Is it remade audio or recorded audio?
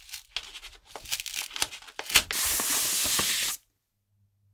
recorded